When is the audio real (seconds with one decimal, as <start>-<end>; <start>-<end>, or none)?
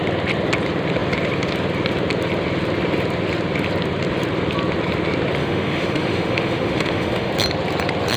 0.0-5.4; 7.3-8.2